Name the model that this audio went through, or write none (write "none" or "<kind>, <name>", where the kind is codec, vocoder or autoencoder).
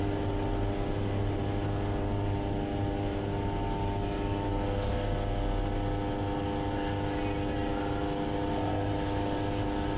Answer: none